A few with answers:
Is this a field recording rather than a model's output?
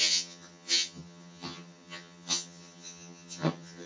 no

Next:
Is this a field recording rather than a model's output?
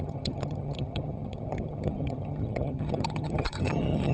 no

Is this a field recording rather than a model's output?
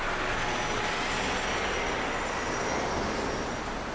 yes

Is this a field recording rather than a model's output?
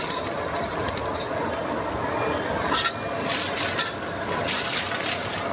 yes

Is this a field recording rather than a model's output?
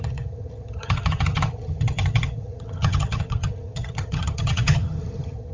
no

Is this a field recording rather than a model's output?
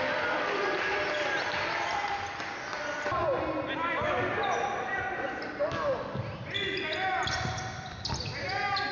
yes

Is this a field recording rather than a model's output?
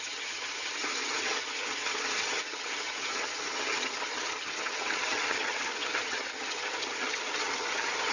no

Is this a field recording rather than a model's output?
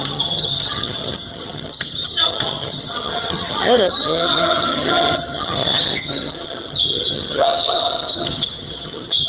no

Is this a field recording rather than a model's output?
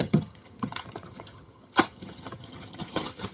no